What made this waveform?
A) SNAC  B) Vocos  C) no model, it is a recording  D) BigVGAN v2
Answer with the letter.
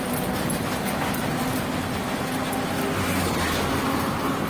C